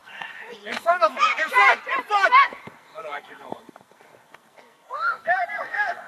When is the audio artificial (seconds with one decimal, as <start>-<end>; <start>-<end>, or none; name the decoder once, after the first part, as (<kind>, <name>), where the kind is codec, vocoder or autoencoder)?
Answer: 0.0-1.8 (codec, SNAC); 2.2-6.1

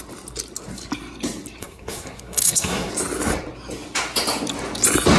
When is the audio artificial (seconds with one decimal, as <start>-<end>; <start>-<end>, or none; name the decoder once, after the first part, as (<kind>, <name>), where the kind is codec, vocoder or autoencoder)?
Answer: 1.6-2.9 (codec, SNAC)